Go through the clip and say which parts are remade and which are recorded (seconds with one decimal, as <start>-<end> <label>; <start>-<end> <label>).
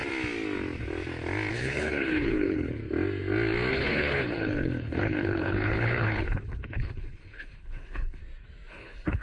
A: 0.0-1.5 recorded; 1.5-2.8 remade; 2.8-3.7 recorded; 3.7-8.2 remade; 8.2-8.7 recorded; 8.7-9.2 remade